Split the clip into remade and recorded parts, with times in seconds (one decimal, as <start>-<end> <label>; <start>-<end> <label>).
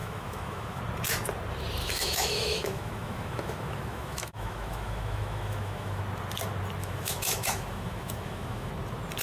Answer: 0.0-0.8 remade; 0.8-1.8 recorded; 1.8-6.0 remade; 6.0-6.8 recorded; 6.8-8.7 remade; 8.7-9.2 recorded